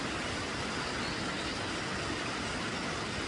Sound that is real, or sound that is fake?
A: real